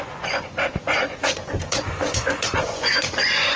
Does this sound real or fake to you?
fake